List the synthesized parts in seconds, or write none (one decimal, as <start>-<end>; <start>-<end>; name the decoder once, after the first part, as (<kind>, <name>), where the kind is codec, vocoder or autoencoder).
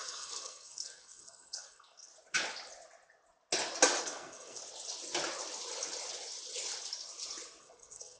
0.0-2.1 (codec, SNAC); 4.0-4.6; 7.6-8.2